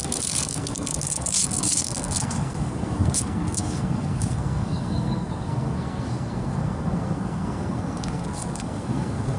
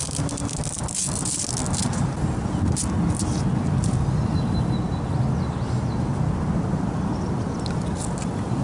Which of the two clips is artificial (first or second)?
first